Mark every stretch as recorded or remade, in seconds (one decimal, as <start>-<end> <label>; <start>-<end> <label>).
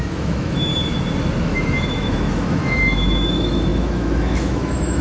0.0-0.7 remade; 0.7-1.4 recorded; 1.4-5.0 remade